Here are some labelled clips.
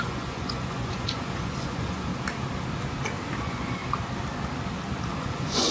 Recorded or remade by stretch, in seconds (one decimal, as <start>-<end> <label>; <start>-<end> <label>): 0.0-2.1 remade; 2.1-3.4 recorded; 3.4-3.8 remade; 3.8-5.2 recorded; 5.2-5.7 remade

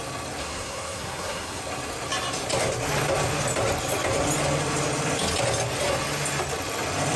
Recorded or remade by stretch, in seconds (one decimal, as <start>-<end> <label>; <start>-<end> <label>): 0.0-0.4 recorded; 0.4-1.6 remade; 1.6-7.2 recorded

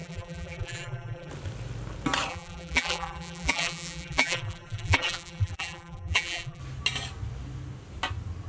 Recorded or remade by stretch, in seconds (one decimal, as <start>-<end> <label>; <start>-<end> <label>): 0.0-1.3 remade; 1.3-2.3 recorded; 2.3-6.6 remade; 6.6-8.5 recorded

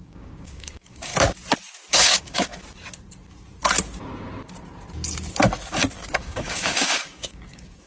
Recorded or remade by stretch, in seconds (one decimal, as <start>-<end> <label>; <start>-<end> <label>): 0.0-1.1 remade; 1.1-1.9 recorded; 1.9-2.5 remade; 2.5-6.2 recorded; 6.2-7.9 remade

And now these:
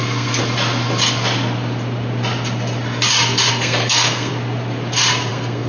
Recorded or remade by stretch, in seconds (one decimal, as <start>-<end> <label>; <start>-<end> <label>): 0.0-0.4 remade; 0.4-3.5 recorded; 3.5-4.3 remade; 4.3-5.3 recorded; 5.3-5.7 remade